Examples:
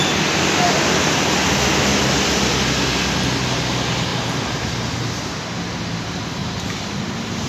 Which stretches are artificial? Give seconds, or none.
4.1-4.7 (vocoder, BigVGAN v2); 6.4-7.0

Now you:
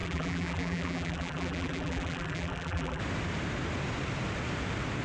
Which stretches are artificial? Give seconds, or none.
0.0-3.0 (vocoder, BigVGAN v2)